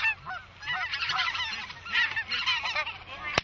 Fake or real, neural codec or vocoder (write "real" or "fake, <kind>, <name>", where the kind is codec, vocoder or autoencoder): real